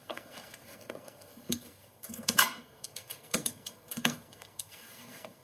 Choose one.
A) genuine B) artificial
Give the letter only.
B